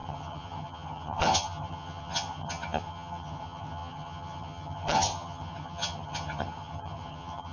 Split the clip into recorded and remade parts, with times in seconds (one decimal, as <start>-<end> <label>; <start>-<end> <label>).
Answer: 0.0-7.5 remade